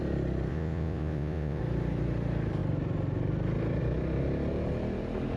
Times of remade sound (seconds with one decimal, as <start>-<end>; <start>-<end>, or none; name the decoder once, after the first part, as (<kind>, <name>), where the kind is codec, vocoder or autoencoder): 0.5-1.6 (vocoder, Vocos)